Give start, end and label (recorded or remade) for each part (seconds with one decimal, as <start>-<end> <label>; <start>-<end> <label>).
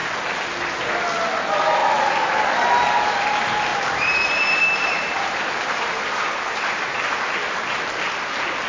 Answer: 0.0-1.8 recorded; 1.8-2.4 remade; 2.4-3.7 recorded; 3.7-7.8 remade; 7.8-8.7 recorded